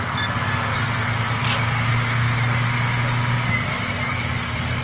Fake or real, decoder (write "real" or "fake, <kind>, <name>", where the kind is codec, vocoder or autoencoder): real